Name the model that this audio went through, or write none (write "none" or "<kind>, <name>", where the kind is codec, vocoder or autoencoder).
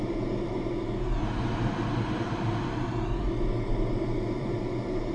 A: none